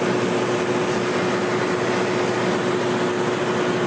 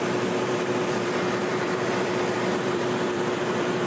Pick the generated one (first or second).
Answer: second